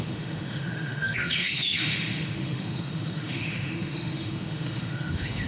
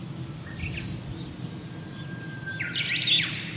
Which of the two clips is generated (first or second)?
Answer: first